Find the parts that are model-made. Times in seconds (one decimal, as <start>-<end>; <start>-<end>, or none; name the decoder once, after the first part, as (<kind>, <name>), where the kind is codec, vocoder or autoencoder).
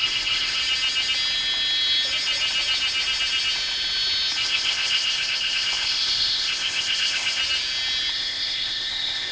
0.0-0.6 (codec, ZipCodec); 4.4-7.4; 8.1-9.3